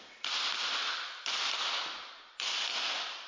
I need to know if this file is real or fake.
real